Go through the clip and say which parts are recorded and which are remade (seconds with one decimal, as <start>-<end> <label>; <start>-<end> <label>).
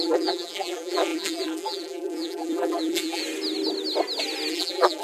0.0-3.2 remade; 3.2-4.5 recorded; 4.5-5.0 remade